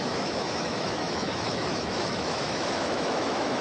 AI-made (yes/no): yes